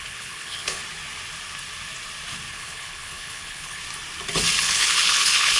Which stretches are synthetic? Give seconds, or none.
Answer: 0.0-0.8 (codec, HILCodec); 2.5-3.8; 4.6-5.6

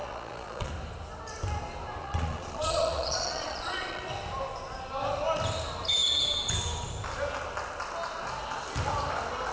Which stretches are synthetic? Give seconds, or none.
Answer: 0.0-0.7 (vocoder, Vocos); 2.0-4.0

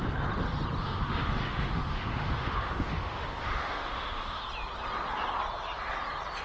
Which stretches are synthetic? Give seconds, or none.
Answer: 0.8-4.4 (autoencoder, DAC-VAE)

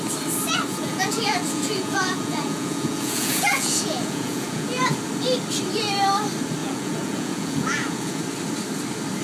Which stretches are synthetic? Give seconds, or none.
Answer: 0.7-5.0 (vocoder, Vocos); 6.6-8.2

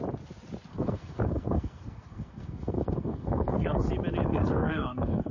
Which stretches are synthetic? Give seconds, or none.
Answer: 0.7-3.9 (codec, SNAC); 4.3-5.3